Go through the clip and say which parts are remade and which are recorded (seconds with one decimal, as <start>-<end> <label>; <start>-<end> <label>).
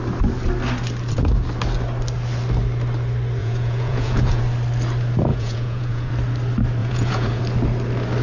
0.0-3.4 recorded; 3.4-4.4 remade; 4.4-5.3 recorded; 5.3-6.1 remade; 6.1-6.8 recorded; 6.8-7.4 remade; 7.4-8.2 recorded